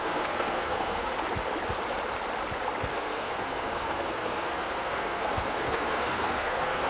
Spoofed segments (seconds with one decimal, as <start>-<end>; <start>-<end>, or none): 0.0-1.1; 2.8-6.9

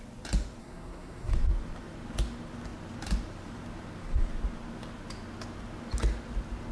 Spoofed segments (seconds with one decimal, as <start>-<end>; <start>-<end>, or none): 0.6-1.3

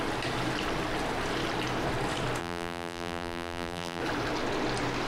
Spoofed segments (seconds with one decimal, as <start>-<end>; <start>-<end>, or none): 2.4-4.0